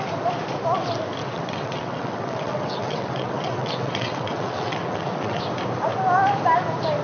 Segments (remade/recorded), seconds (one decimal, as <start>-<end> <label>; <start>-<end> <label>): 0.0-1.2 recorded; 1.2-5.4 remade; 5.4-7.0 recorded